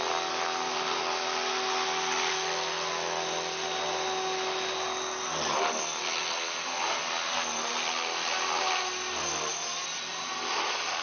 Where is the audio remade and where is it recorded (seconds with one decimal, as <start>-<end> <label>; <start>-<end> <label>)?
0.0-11.0 recorded